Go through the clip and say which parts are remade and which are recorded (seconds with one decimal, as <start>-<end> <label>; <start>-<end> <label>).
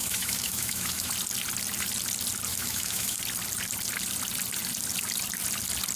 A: 0.0-1.1 remade; 1.1-2.5 recorded; 2.5-3.2 remade; 3.2-6.0 recorded